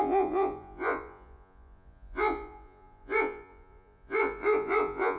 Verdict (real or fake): fake